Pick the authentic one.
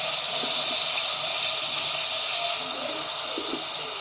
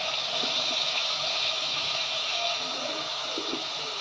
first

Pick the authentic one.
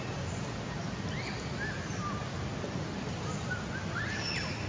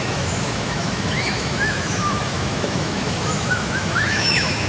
first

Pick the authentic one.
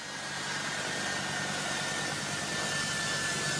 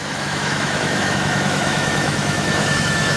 first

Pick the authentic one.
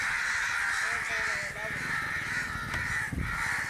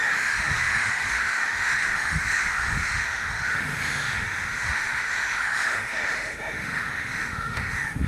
first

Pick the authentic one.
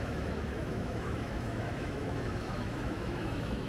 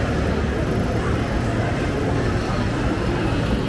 second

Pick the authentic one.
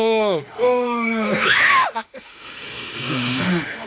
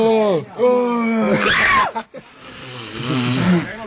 second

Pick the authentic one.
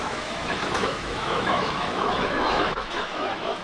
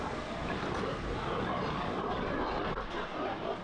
second